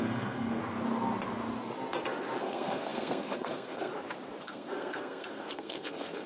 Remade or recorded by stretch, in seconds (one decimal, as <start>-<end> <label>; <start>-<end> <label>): 0.0-0.6 remade; 0.6-2.4 recorded; 2.4-3.9 remade; 3.9-4.4 recorded; 4.4-6.3 remade